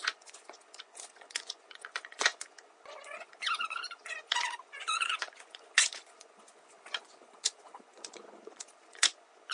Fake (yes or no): yes